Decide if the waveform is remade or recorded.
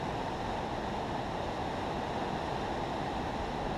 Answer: recorded